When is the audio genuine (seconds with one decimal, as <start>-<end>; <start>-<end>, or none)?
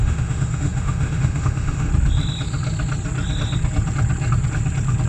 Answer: 1.9-5.1